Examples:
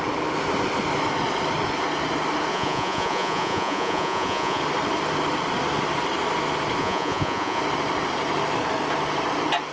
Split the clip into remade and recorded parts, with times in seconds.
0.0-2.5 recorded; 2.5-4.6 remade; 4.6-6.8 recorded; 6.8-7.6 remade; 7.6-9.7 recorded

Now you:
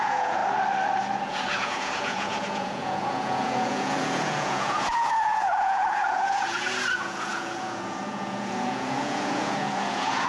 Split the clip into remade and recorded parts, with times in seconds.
0.0-0.4 remade; 0.4-1.1 recorded; 1.1-10.3 remade

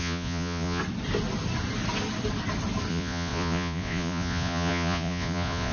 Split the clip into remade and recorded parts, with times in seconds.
0.0-0.8 remade; 0.8-2.9 recorded; 2.9-5.7 remade

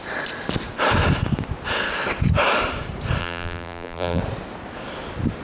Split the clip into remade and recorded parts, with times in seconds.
0.0-3.2 recorded; 3.2-4.2 remade; 4.2-5.4 recorded

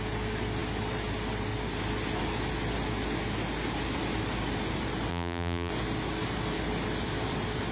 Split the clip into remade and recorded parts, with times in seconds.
0.0-5.1 recorded; 5.1-5.7 remade; 5.7-7.7 recorded

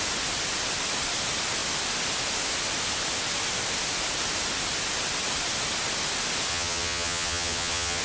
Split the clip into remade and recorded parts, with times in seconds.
0.0-6.5 recorded; 6.5-8.0 remade

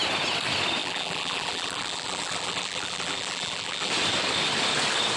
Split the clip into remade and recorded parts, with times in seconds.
0.0-0.8 recorded; 0.8-3.9 remade; 3.9-5.2 recorded

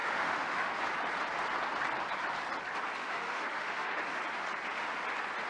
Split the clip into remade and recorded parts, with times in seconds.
0.0-0.8 remade; 0.8-3.0 recorded; 3.0-4.2 remade; 4.2-5.5 recorded